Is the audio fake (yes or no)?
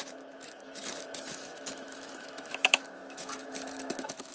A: yes